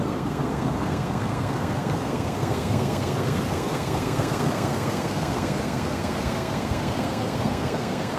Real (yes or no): no